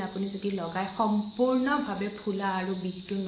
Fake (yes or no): no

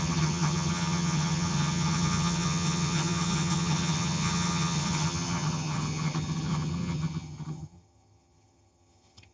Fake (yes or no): yes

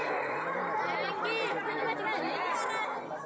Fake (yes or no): no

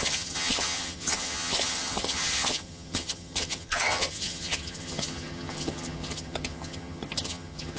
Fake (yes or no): yes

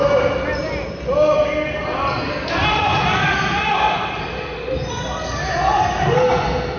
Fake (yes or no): no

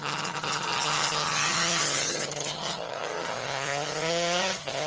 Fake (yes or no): yes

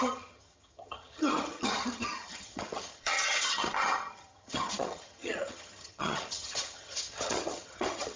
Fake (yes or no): yes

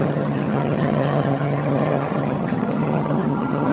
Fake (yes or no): yes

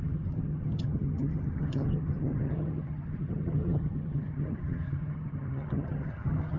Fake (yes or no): yes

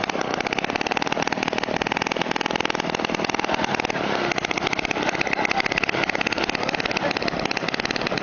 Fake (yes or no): no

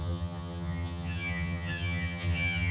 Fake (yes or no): yes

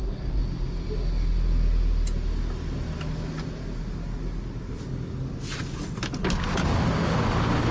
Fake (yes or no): no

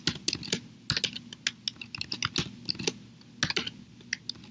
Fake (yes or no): no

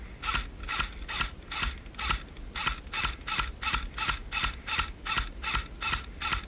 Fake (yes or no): no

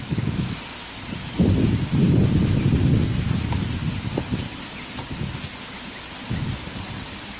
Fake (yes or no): no